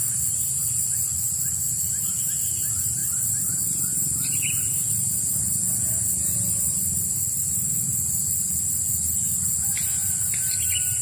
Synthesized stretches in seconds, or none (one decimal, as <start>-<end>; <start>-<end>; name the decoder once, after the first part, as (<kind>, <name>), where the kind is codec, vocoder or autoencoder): none